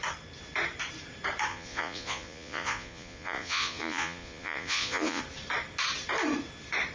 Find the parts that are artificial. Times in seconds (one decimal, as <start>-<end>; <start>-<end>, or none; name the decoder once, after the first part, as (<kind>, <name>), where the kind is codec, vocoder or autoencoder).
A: 1.5-5.2 (vocoder, Vocos)